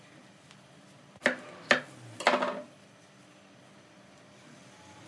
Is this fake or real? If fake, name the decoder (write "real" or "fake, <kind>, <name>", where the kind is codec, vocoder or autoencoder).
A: real